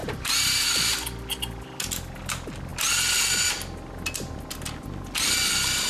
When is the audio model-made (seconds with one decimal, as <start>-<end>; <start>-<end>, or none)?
0.0-0.7